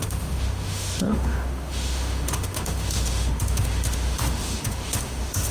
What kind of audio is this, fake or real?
fake